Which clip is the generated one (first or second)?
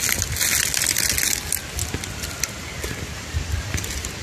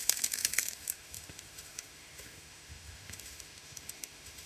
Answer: second